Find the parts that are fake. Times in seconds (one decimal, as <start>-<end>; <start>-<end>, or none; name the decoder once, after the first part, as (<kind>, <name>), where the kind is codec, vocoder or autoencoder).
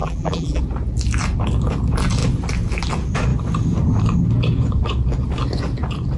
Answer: 0.0-0.6 (vocoder, BigVGAN v2)